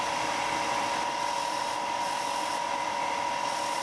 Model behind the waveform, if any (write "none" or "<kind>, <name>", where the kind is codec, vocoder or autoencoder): none